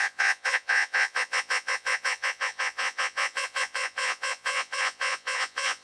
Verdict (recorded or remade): remade